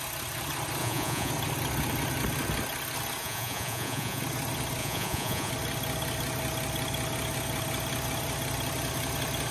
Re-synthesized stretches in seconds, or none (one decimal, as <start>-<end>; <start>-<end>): 0.8-1.3; 3.2-4.2; 4.8-5.5